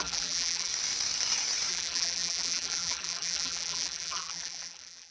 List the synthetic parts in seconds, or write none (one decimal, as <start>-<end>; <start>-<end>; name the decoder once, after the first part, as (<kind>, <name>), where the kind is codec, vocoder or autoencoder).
0.0-0.7 (vocoder, BigVGAN v2); 1.7-5.1